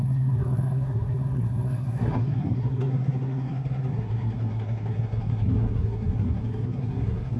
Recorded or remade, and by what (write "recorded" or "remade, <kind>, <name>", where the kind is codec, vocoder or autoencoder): remade, codec, SNAC